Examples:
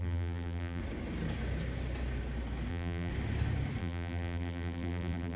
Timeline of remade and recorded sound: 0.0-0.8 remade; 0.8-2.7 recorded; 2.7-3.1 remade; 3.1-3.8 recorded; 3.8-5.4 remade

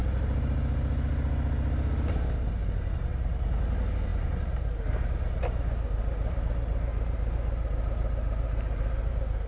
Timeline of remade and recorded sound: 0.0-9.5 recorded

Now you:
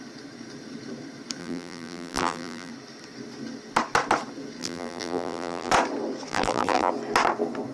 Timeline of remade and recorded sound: 0.0-1.4 recorded; 1.4-2.7 remade; 2.7-4.6 recorded; 4.6-5.7 remade; 5.7-6.3 recorded; 6.3-6.9 remade; 6.9-7.7 recorded

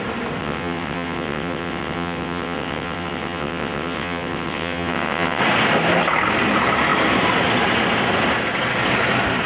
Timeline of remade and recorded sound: 0.0-0.4 recorded; 0.4-5.4 remade; 5.4-9.5 recorded